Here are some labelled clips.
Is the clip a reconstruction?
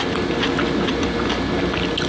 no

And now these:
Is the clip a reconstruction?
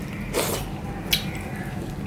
no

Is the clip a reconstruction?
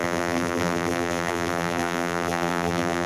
yes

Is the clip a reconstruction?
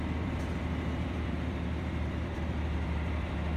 yes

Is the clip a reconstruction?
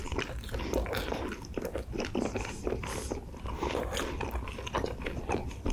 yes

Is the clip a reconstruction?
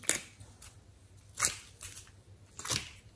no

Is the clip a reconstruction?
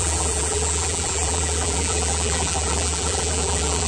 yes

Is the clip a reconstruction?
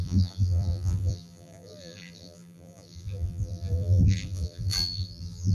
yes